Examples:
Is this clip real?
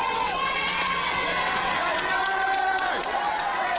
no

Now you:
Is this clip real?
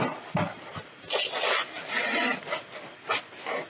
yes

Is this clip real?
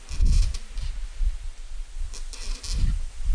yes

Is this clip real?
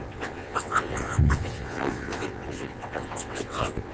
no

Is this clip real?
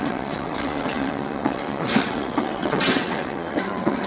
no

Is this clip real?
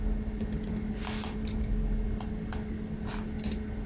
yes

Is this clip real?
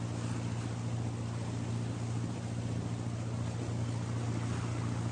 yes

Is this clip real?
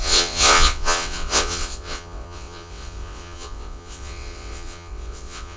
no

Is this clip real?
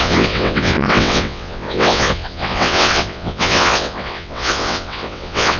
no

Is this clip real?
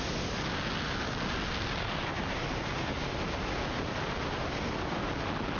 yes